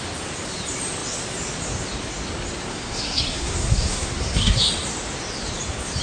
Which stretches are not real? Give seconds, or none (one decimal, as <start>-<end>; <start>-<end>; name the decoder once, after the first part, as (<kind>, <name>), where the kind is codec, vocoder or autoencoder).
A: 2.7-4.7 (codec, SNAC)